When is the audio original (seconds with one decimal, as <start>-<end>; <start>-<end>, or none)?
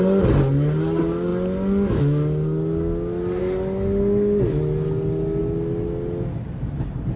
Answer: 0.0-7.2